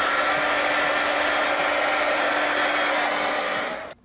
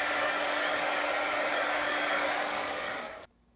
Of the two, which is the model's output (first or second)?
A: second